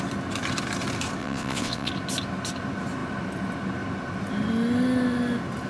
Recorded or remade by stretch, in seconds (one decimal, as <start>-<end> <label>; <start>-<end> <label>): 0.0-1.2 recorded; 1.2-1.9 remade; 1.9-5.7 recorded